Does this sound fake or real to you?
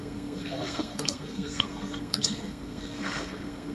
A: fake